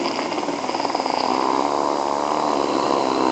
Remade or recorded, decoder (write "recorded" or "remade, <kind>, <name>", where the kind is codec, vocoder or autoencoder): recorded